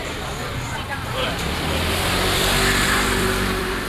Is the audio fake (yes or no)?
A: yes